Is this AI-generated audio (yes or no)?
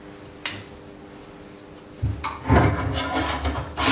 no